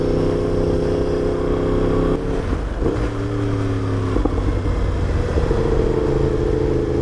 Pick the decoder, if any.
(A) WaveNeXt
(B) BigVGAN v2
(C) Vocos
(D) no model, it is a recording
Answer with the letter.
D